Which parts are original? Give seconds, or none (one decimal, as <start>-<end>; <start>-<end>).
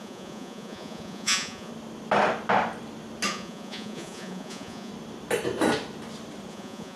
1.7-3.3; 4.9-6.5